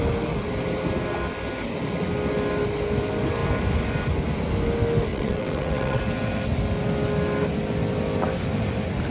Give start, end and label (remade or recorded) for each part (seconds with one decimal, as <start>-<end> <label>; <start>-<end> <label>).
0.0-5.1 recorded; 5.1-6.0 remade; 6.0-9.1 recorded